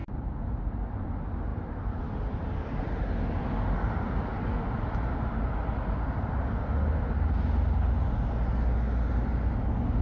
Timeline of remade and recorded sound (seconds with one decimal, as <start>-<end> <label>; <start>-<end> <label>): 0.0-10.0 recorded